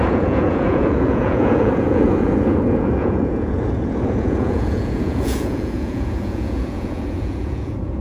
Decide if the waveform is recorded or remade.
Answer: remade